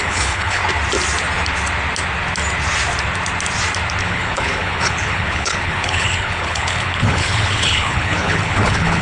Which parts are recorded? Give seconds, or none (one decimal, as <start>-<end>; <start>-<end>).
0.6-4.0